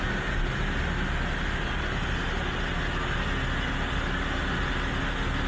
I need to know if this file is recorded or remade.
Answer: recorded